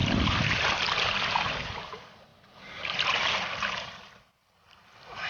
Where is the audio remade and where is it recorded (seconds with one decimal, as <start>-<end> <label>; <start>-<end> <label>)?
0.0-2.3 recorded; 2.3-3.7 remade; 3.7-5.3 recorded